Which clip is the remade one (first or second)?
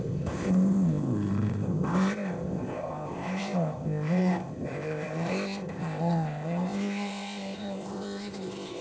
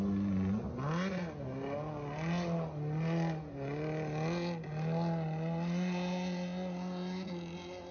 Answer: first